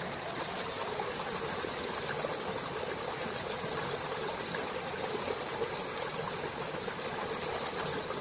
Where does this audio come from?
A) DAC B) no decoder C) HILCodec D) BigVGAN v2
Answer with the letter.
B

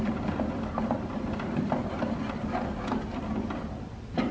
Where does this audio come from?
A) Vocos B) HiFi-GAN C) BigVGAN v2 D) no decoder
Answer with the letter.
D